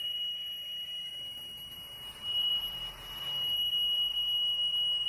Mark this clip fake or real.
fake